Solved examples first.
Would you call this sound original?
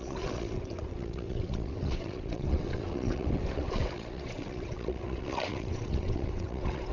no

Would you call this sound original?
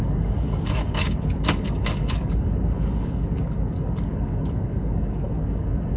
no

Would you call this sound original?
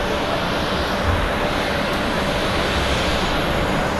yes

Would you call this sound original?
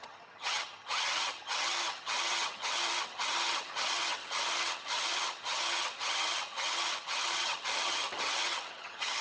no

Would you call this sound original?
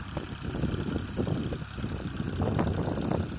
yes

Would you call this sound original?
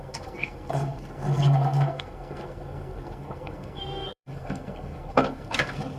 no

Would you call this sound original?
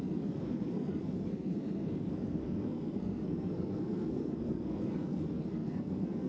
no